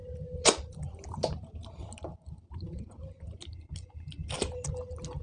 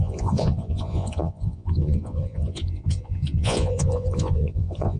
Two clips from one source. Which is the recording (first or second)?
first